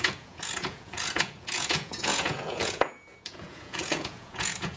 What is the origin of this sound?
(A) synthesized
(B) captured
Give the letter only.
A